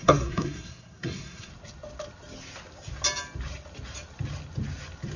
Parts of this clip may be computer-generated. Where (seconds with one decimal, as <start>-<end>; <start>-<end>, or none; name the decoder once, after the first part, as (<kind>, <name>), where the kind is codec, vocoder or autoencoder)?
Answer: 0.0-1.5 (codec, SNAC)